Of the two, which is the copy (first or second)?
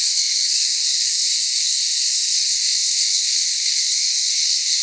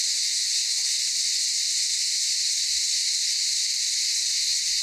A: first